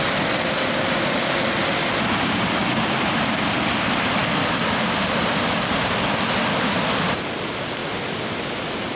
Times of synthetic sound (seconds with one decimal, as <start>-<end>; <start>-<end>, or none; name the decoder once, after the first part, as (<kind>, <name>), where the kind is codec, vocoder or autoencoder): none